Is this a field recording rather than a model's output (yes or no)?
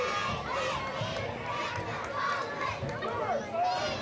yes